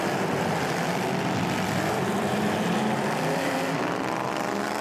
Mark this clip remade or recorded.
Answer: recorded